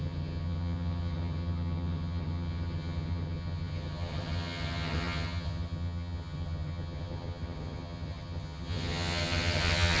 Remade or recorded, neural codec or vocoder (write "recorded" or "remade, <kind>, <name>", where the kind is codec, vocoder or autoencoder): remade, vocoder, HiFi-GAN